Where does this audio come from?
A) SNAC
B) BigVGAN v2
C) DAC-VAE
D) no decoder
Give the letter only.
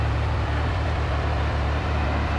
B